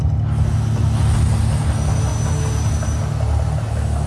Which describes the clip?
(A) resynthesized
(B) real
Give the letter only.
B